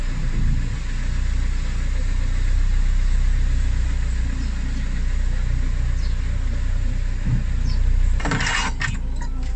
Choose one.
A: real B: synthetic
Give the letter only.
A